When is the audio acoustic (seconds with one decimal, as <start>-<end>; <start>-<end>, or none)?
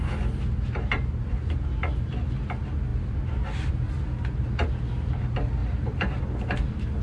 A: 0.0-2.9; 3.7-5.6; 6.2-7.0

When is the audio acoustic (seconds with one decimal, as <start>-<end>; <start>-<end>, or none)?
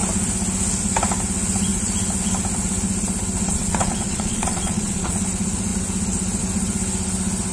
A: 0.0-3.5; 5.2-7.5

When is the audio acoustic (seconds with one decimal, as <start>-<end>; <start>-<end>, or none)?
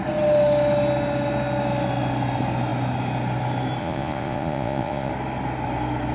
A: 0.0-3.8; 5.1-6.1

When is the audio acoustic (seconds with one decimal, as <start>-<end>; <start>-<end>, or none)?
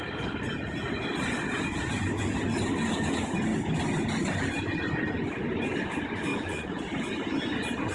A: 0.0-6.3; 6.8-7.9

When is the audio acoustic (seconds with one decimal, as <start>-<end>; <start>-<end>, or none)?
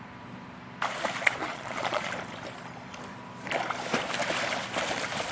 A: 0.0-1.4; 2.1-5.3